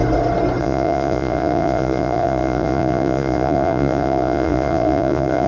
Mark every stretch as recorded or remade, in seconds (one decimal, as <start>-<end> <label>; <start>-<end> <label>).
0.0-0.6 recorded; 0.6-5.5 remade